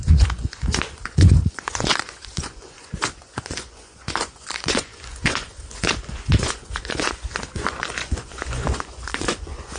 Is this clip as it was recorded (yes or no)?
no